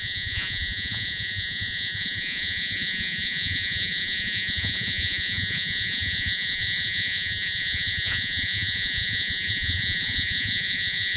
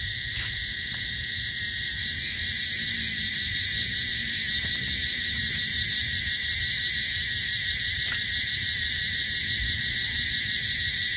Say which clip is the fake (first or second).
first